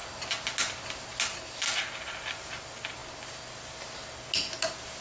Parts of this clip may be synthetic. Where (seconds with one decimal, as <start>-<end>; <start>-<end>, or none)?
none